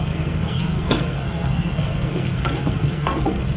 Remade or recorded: remade